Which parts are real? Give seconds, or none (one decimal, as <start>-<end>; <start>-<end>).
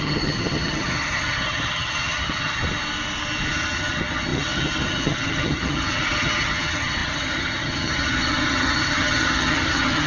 2.6-3.5